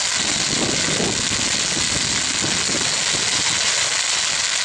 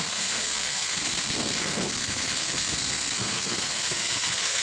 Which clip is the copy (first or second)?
second